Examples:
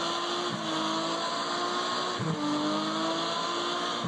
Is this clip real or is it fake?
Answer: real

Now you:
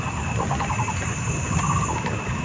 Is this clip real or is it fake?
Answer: real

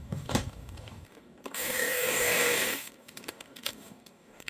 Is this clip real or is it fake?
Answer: fake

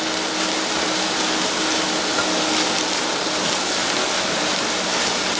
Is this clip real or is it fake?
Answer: real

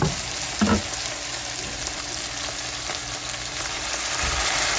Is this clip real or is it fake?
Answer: real